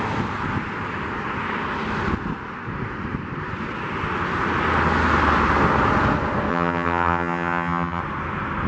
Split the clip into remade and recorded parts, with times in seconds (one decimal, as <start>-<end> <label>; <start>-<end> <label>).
0.0-6.5 recorded; 6.5-8.0 remade; 8.0-8.7 recorded